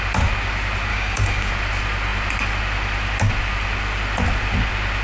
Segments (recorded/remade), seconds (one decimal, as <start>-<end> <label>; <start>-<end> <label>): 0.0-0.9 recorded; 0.9-1.5 remade; 1.5-5.0 recorded